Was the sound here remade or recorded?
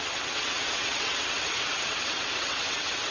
remade